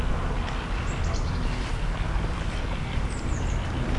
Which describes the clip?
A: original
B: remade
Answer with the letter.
B